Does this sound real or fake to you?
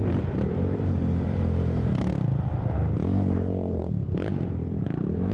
fake